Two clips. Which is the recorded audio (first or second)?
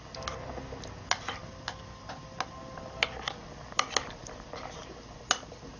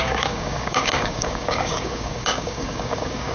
first